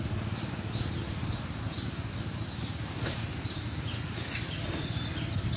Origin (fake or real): real